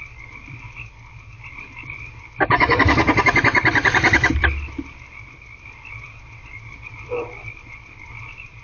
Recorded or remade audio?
remade